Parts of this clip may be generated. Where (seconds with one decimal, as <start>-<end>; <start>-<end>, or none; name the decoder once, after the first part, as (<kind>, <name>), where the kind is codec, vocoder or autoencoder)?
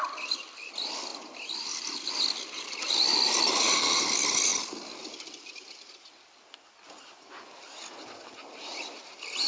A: none